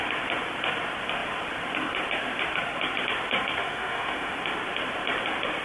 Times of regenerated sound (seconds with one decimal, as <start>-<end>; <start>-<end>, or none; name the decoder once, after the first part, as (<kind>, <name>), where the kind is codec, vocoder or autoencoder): 3.6-4.3 (autoencoder, DAC-VAE)